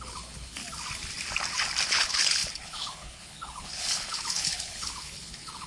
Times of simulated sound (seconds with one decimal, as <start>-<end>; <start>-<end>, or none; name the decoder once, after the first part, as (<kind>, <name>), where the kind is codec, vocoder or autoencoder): 0.0-0.6 (codec, HILCodec); 1.9-5.7